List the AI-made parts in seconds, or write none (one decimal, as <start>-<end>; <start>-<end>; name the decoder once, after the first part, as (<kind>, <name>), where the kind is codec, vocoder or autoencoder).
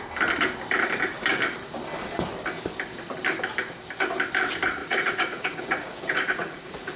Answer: 4.8-7.0 (vocoder, Vocos)